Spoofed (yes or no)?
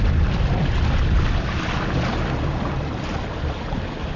no